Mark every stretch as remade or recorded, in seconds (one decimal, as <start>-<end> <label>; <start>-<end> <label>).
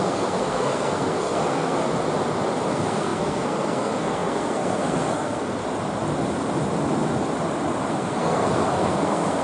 0.0-1.9 remade; 1.9-2.7 recorded; 2.7-5.6 remade; 5.6-7.9 recorded; 7.9-9.4 remade